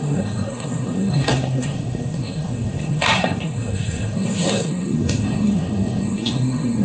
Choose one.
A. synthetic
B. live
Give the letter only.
A